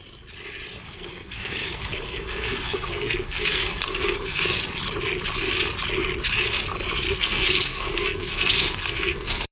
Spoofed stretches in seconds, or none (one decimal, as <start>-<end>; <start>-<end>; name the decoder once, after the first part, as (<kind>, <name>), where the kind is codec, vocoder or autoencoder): 0.8-4.6 (codec, SNAC); 7.1-9.5